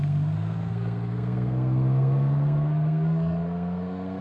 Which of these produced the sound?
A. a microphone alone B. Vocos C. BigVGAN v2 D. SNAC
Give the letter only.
D